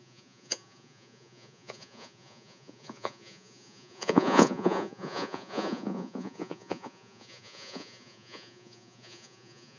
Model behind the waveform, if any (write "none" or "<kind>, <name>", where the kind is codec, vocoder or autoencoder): vocoder, Vocos